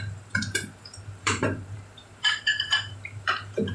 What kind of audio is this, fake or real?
fake